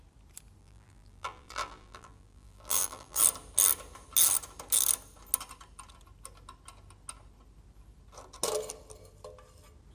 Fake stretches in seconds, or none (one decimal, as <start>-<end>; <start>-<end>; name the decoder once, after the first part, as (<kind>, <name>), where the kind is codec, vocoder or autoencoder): 0.6-3.2 (vocoder, BigVGAN v2)